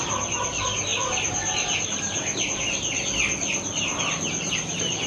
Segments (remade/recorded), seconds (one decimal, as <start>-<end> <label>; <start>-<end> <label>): 0.0-5.1 recorded